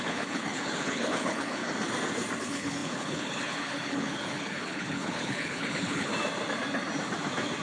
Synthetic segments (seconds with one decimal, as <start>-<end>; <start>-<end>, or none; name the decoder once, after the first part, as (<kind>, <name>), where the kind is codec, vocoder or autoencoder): 0.0-1.6 (codec, HILCodec); 2.4-6.1